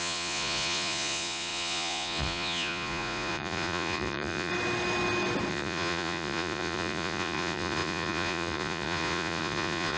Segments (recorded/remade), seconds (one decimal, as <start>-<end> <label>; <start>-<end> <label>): 0.0-4.5 remade; 4.5-5.5 recorded; 5.5-10.0 remade